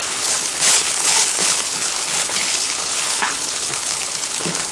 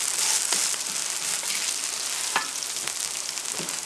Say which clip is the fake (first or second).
first